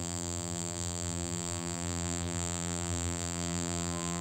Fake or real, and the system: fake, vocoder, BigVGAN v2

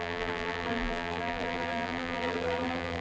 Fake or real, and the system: fake, vocoder, BigVGAN v2